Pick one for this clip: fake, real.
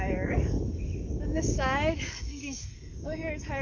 fake